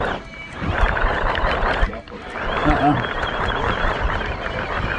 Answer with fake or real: fake